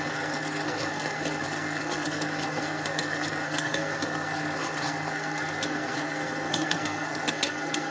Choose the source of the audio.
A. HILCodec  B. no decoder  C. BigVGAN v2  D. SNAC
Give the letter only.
D